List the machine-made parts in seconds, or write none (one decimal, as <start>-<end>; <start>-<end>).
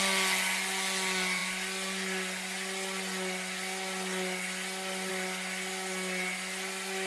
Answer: none